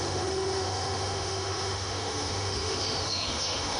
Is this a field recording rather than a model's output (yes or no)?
no